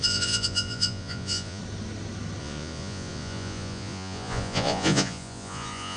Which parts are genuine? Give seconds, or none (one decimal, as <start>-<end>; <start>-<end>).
1.6-2.4